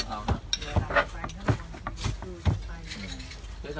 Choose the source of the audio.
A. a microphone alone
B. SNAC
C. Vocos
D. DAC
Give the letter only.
A